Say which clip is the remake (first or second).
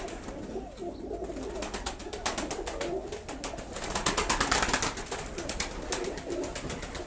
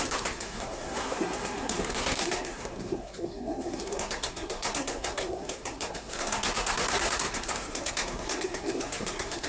second